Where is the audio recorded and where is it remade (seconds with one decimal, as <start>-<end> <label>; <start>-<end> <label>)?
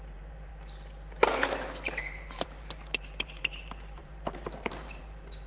0.0-0.5 remade; 0.5-2.0 recorded; 2.0-5.5 remade